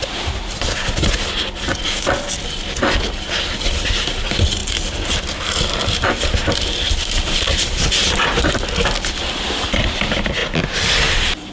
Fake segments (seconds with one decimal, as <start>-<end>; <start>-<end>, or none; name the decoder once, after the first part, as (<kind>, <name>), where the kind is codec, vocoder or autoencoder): none